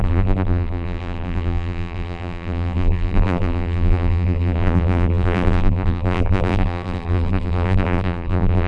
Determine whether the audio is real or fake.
fake